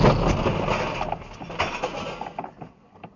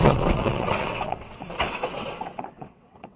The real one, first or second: first